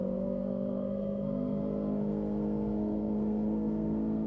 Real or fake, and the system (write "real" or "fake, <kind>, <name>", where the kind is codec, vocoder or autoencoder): fake, codec, SNAC